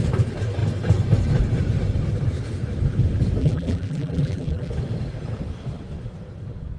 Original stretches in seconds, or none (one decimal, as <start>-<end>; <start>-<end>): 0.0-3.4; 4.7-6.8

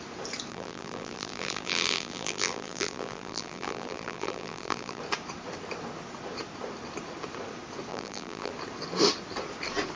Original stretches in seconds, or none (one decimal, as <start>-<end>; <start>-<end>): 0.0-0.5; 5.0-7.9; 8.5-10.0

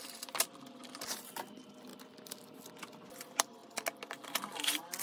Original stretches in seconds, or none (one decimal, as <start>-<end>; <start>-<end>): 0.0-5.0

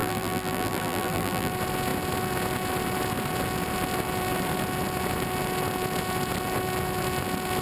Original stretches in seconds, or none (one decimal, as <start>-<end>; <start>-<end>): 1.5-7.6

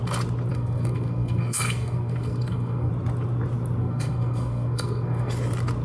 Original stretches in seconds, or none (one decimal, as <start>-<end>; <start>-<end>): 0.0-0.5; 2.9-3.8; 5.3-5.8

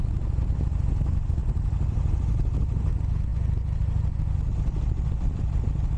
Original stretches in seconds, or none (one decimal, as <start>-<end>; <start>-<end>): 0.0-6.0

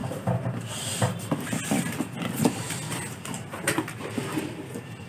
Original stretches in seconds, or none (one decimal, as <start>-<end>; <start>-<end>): 0.0-5.1